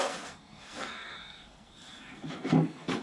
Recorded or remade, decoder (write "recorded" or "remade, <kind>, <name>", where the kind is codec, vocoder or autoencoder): remade, codec, SNAC